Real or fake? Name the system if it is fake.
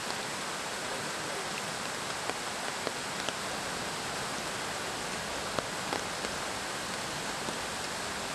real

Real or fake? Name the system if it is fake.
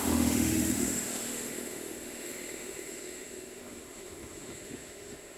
fake, autoencoder, DAC-VAE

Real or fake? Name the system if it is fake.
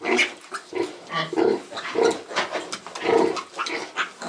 real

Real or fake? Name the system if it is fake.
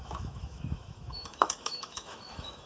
fake, autoencoder, DAC-VAE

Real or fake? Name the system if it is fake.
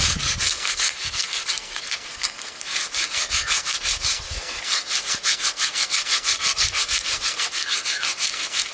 fake, codec, SNAC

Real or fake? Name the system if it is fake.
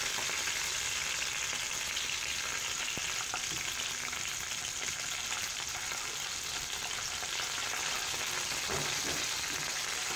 real